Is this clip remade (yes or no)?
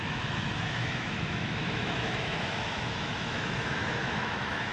yes